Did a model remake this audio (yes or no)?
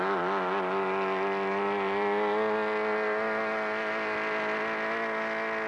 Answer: no